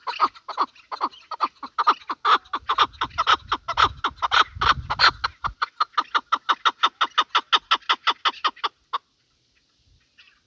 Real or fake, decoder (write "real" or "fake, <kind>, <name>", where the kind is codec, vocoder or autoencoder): real